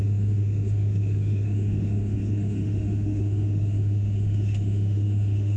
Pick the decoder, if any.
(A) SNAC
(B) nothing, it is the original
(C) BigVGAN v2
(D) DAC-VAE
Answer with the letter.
D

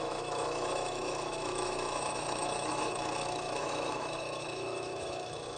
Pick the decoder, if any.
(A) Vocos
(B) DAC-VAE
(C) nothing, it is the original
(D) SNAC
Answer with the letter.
B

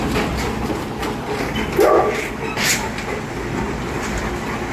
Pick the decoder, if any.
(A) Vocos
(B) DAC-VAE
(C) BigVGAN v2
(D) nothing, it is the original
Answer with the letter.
D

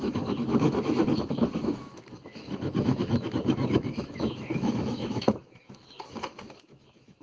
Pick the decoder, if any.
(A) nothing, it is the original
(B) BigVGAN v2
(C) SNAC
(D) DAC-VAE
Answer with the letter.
D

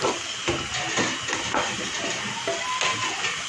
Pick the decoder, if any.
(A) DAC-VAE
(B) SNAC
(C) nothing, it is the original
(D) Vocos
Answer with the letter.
C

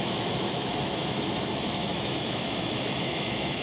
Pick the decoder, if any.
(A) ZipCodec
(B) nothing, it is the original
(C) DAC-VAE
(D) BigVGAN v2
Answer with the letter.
C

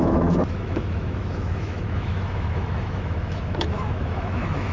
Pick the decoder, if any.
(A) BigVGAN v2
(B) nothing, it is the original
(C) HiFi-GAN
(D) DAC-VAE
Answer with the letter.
D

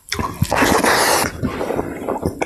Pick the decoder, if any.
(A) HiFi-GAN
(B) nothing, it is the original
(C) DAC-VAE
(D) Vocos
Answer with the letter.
B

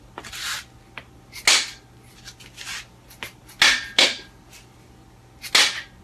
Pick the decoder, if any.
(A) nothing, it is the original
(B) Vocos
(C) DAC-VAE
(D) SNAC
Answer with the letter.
A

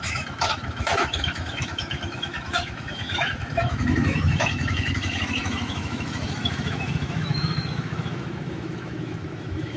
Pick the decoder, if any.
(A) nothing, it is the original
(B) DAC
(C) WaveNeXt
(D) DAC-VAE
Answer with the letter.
D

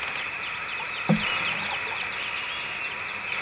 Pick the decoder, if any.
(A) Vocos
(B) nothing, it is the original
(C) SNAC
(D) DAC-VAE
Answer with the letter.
B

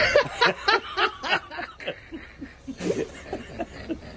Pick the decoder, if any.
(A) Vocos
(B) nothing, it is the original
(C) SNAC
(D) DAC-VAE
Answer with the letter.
B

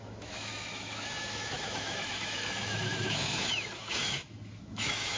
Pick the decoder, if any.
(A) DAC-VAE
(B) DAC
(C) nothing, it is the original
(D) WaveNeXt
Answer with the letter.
A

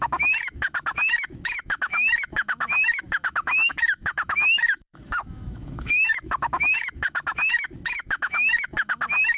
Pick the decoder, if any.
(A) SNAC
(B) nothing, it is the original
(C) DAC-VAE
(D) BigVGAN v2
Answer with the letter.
C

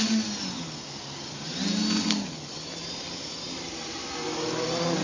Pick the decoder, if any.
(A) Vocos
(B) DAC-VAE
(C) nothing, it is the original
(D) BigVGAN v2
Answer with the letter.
C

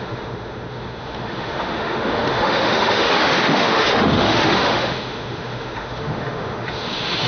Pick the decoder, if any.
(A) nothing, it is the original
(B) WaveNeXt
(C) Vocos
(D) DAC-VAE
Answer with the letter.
D